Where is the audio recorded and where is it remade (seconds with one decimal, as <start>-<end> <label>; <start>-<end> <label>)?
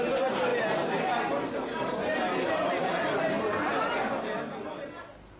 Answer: 0.0-5.4 recorded